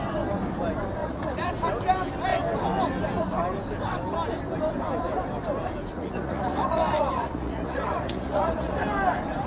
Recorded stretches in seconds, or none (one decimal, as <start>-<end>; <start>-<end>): 0.0-1.0; 1.5-5.9; 8.8-9.5